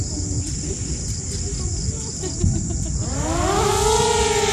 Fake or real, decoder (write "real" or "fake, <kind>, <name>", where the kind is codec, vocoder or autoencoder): real